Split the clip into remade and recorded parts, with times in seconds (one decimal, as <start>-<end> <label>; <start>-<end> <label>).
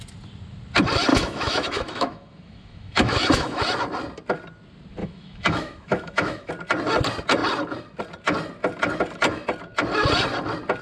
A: 0.0-1.1 recorded; 1.1-3.6 remade; 3.6-5.0 recorded; 5.0-6.5 remade; 6.5-10.8 recorded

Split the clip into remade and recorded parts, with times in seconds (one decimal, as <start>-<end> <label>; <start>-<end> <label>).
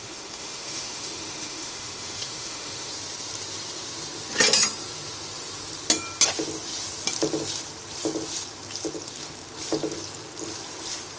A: 0.0-2.9 remade; 2.9-11.2 recorded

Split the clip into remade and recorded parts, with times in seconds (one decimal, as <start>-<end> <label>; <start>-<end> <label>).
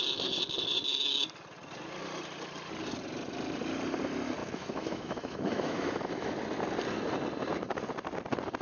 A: 0.0-4.4 recorded; 4.4-6.3 remade; 6.3-8.6 recorded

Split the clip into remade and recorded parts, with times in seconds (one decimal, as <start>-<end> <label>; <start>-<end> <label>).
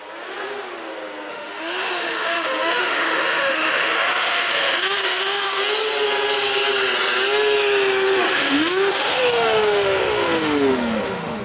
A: 0.0-1.3 recorded; 1.3-5.6 remade; 5.6-8.3 recorded; 8.3-11.4 remade